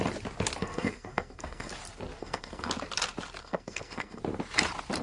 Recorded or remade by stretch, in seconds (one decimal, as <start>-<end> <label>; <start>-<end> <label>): 0.0-0.6 recorded; 0.6-1.7 remade; 1.7-2.2 recorded; 2.2-2.7 remade; 2.7-3.4 recorded; 3.4-4.2 remade; 4.2-5.0 recorded